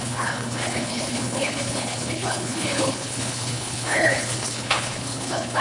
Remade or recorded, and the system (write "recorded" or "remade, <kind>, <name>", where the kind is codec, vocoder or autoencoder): remade, codec, HILCodec